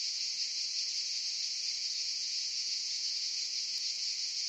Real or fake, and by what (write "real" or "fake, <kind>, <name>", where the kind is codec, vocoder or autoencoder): fake, vocoder, Vocos